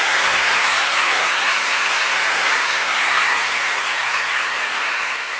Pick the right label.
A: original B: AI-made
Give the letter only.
B